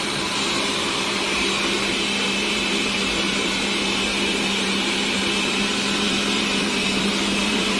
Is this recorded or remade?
remade